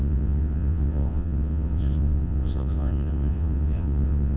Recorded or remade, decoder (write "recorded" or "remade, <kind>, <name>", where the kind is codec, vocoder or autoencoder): remade, vocoder, WaveNeXt